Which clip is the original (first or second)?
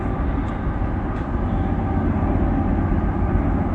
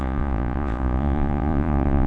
first